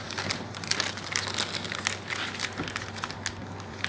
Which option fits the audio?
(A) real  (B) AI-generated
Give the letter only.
A